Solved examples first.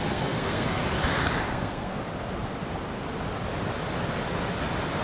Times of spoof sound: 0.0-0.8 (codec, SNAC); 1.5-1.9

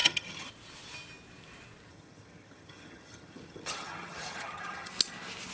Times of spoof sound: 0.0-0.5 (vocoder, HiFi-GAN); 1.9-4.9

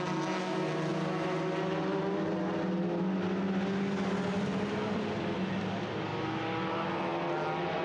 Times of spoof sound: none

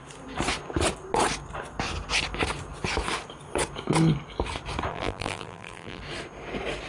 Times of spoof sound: 4.9-6.0 (vocoder, BigVGAN v2)